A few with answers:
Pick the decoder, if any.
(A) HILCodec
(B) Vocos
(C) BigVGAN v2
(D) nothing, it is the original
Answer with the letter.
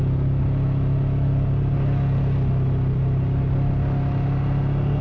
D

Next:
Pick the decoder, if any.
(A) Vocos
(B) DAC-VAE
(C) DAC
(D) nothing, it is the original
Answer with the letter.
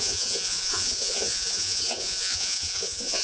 A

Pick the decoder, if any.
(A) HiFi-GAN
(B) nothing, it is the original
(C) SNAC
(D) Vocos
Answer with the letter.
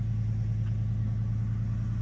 B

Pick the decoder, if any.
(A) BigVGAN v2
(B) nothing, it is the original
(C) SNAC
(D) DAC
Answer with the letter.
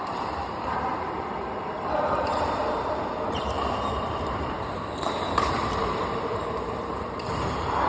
A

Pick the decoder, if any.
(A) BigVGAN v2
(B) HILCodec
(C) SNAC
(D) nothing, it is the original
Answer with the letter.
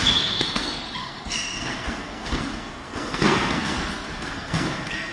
C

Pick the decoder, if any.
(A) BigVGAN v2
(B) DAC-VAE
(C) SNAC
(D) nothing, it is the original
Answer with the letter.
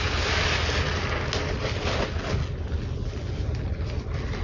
D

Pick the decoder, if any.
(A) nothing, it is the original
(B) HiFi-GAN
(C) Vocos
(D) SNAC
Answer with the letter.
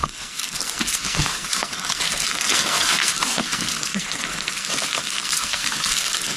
D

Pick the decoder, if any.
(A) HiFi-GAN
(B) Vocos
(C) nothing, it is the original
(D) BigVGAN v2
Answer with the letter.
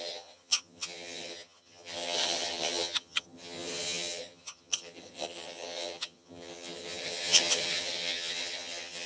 A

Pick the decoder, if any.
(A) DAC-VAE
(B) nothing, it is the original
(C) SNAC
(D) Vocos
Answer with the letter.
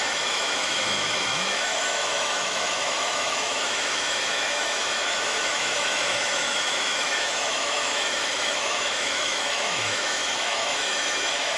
A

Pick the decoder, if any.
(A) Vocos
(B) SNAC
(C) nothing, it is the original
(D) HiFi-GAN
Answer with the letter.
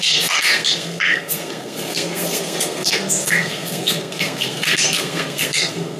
B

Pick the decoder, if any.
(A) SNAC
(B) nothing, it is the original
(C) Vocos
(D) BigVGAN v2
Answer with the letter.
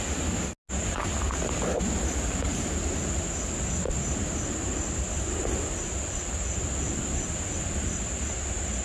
B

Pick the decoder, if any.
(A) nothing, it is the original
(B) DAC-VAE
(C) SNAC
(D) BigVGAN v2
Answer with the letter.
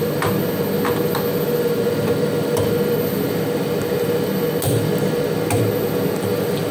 A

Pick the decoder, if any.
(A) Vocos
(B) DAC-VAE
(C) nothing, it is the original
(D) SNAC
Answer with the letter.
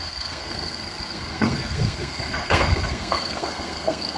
D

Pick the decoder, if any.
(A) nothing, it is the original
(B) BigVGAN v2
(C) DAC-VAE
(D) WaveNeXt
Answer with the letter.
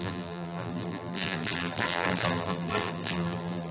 B